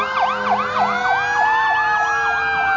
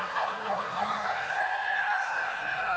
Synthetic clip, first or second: second